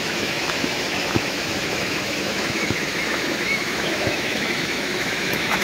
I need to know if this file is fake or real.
fake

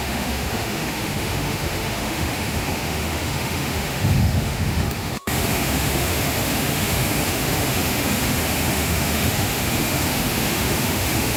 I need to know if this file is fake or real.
fake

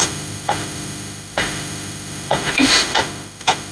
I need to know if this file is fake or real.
fake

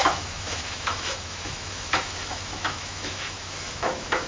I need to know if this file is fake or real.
fake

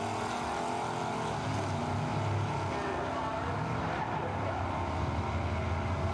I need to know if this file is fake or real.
real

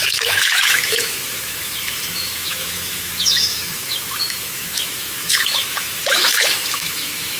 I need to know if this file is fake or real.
fake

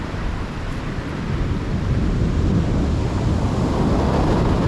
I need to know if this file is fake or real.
real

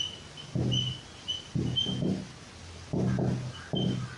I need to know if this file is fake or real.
real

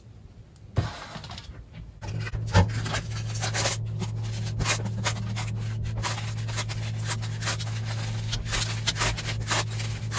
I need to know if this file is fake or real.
real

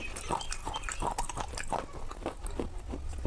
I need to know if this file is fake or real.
real